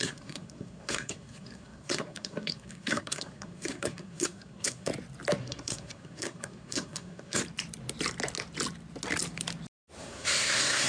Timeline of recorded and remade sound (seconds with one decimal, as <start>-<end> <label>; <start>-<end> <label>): 0.0-4.9 remade; 4.9-5.4 recorded; 5.4-7.4 remade; 7.4-10.0 recorded; 10.0-10.9 remade